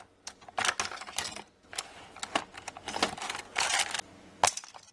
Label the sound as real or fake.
real